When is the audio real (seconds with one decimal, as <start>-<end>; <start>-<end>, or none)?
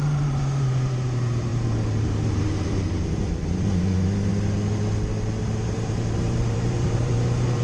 4.3-5.4